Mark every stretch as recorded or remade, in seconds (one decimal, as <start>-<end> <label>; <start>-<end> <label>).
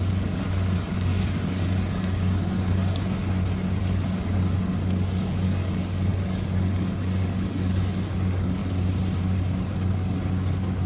0.0-3.2 remade; 3.2-3.8 recorded; 3.8-8.6 remade; 8.6-9.2 recorded; 9.2-10.9 remade